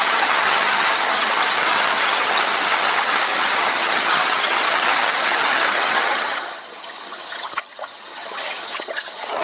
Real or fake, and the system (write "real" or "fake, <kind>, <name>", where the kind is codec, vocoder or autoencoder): fake, vocoder, HiFi-GAN